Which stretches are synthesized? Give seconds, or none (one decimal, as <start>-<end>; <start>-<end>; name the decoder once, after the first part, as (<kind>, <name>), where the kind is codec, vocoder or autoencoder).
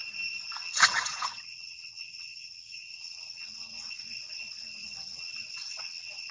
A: 0.6-6.3 (vocoder, WaveNeXt)